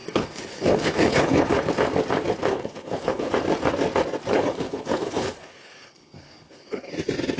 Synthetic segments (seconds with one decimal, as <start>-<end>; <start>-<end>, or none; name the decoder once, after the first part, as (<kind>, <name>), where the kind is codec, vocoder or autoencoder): 0.0-1.7 (codec, HILCodec); 2.5-3.3; 4.3-6.9